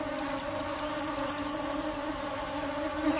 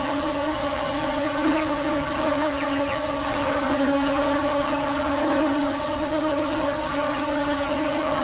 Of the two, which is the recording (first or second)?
first